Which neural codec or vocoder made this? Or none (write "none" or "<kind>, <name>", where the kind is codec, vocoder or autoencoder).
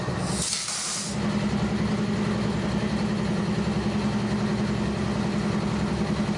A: none